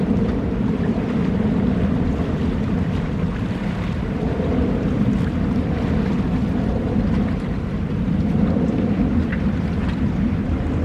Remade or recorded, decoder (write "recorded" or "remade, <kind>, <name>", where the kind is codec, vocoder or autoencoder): remade, vocoder, BigVGAN v2